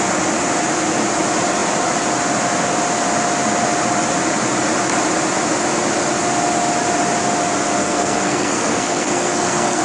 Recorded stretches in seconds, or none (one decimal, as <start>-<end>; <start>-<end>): 0.0-7.8